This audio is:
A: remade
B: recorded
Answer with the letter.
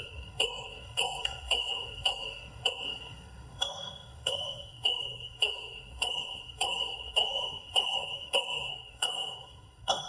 A